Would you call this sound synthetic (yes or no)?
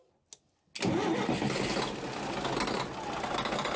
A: no